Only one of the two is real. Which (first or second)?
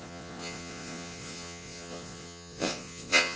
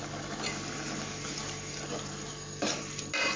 second